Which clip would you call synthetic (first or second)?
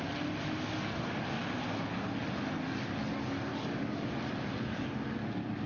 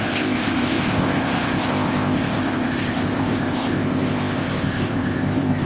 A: second